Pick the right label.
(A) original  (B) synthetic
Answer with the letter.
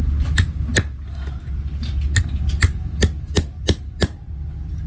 A